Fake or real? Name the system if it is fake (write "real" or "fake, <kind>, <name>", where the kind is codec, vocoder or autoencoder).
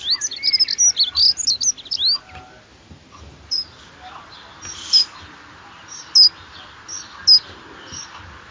real